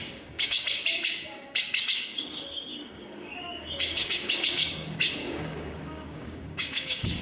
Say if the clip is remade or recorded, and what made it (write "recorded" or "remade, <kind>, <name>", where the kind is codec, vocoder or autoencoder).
remade, codec, DAC